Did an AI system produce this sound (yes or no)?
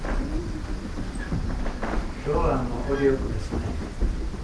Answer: no